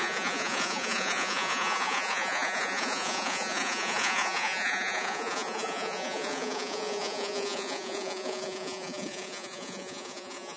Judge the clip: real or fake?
fake